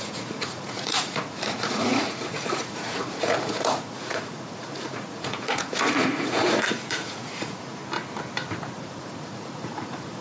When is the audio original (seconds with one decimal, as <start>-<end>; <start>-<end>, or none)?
7.8-8.8

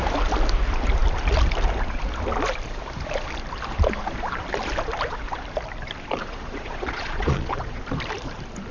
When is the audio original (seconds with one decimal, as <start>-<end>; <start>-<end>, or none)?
0.0-6.2; 7.8-8.7